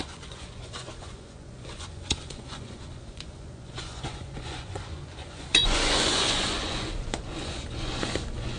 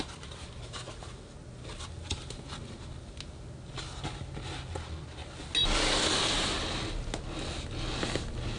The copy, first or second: first